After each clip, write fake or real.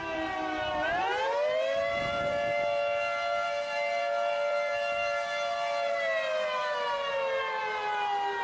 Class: fake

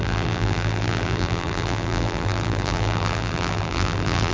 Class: fake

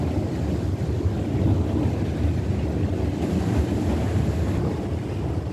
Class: real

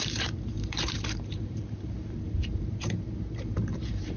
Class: fake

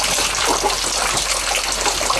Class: real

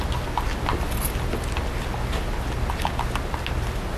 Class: real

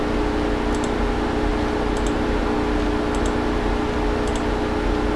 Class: real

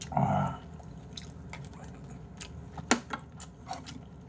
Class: real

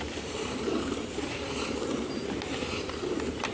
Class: fake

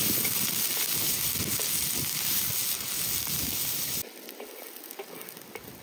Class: real